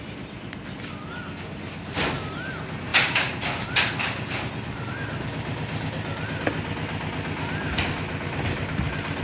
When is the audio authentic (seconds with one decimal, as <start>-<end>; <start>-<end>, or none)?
0.0-9.2